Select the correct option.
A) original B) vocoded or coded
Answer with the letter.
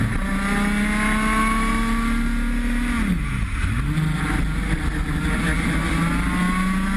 A